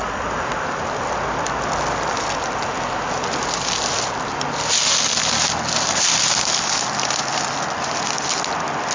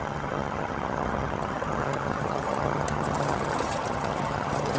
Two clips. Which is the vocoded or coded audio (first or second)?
second